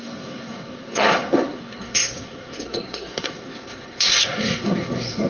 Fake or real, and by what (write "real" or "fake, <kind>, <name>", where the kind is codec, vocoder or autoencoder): fake, codec, SNAC